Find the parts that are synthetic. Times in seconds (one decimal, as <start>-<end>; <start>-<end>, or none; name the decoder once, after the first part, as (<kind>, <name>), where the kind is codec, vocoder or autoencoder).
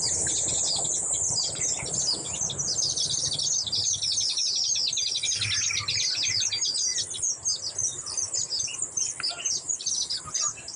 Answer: none